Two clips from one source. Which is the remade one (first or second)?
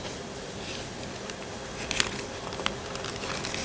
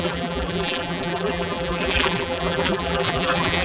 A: second